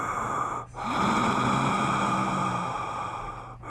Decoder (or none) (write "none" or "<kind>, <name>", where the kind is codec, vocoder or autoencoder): none